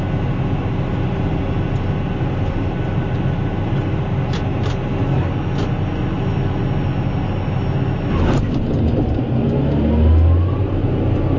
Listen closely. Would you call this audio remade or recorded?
recorded